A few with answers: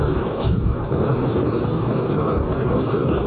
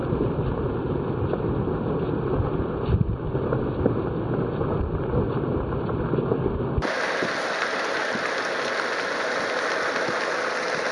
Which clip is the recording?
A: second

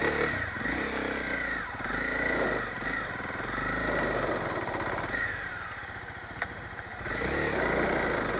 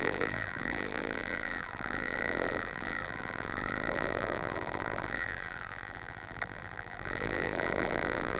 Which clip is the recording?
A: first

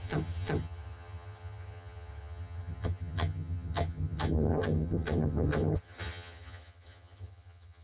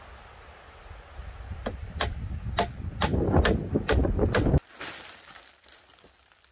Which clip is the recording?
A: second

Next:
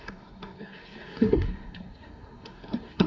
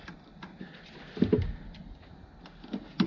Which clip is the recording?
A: second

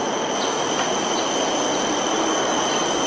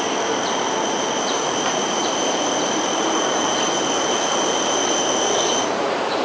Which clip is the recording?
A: first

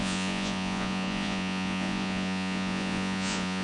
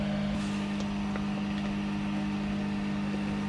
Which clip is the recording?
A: second